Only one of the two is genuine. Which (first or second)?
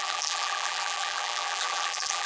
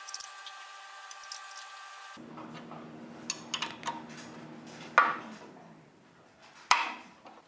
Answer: second